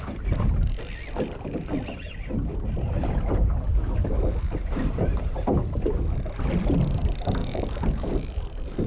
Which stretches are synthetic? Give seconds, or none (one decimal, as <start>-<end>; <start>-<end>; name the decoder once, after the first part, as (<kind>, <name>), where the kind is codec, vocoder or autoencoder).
7.4-8.1 (codec, DAC)